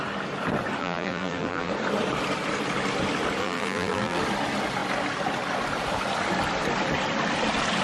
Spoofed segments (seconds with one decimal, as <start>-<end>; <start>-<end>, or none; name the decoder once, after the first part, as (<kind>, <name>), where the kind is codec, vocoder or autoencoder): 0.8-1.7 (vocoder, BigVGAN v2); 3.4-4.2